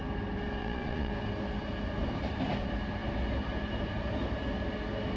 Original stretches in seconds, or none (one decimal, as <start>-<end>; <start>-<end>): 0.0-0.6; 1.1-5.2

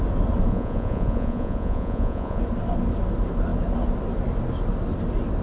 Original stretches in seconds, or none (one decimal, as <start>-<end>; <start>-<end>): 0.0-0.5; 2.4-5.4

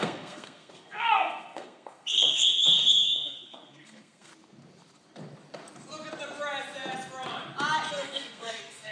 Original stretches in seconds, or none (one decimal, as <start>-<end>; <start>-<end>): 4.3-7.9

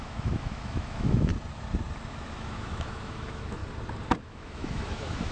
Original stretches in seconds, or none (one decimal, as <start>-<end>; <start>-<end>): 1.3-2.1; 3.6-4.2

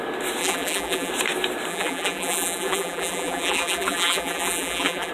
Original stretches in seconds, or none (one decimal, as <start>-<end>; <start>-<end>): 0.0-0.4; 1.1-1.7

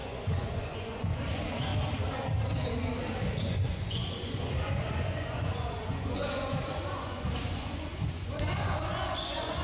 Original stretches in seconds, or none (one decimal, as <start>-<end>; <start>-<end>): 1.7-3.4